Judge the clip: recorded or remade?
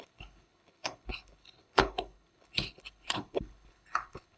remade